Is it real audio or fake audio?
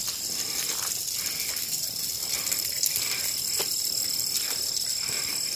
real